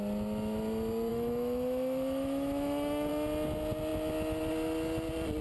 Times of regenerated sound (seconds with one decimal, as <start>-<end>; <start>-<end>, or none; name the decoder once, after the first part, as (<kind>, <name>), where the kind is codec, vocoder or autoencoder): 1.1-3.1 (autoencoder, DAC-VAE)